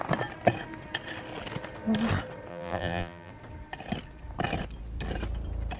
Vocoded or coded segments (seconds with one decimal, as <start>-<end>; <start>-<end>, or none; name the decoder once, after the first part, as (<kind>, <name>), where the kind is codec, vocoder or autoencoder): 2.5-3.3 (vocoder, BigVGAN v2)